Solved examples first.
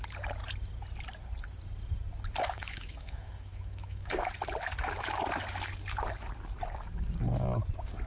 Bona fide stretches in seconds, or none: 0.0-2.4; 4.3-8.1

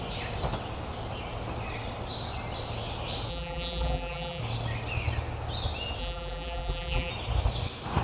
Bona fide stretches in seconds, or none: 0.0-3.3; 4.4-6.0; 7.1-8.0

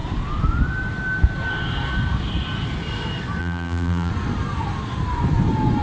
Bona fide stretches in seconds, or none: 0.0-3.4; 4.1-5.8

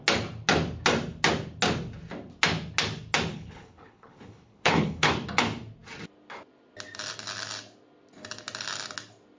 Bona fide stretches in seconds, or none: 0.0-3.3; 5.1-9.4